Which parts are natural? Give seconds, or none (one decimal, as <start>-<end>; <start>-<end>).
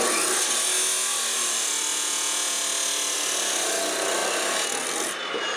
0.0-1.9; 2.6-5.6